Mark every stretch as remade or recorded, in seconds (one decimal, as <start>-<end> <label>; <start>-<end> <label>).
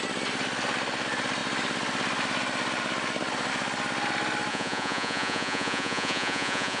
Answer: 0.0-4.5 recorded; 4.5-6.8 remade